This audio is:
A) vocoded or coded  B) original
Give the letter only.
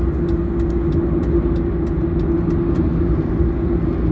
B